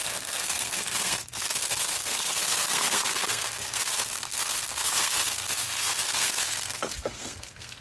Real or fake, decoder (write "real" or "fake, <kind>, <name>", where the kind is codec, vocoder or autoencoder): fake, codec, SNAC